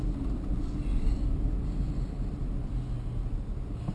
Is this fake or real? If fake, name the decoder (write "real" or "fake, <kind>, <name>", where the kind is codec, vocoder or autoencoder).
real